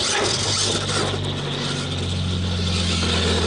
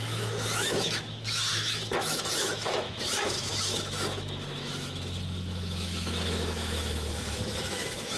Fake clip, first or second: second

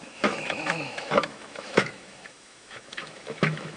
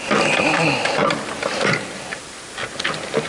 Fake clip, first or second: first